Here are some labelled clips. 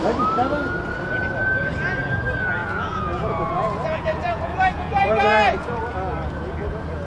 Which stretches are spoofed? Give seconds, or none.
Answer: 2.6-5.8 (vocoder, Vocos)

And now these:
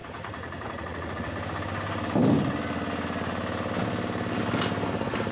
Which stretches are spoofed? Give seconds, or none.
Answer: 0.0-1.3 (vocoder, Vocos)

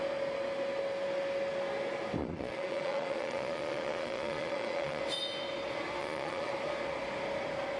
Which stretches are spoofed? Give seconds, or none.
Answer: 2.2-5.0 (vocoder, Vocos); 6.0-6.5

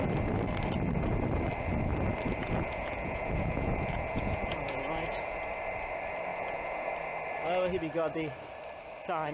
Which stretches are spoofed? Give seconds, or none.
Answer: 2.4-5.4 (vocoder, Vocos); 6.3-6.9

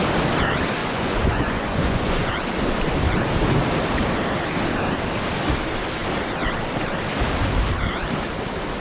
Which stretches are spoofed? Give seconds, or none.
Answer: 0.8-2.3 (vocoder, Vocos)

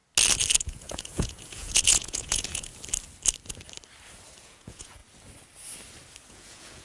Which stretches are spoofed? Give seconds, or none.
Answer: 0.6-2.7 (vocoder, Vocos); 4.4-5.0; 6.3-6.8

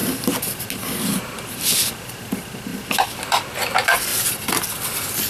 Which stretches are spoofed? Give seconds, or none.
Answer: none

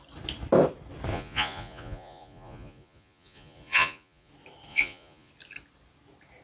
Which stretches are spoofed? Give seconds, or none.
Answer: 1.1-4.3 (vocoder, Vocos); 4.7-5.3